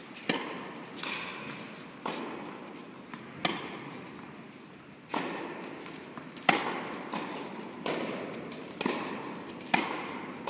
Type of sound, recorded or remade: recorded